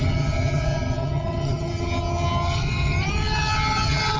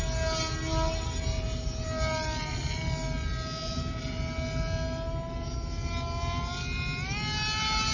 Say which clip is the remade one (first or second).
first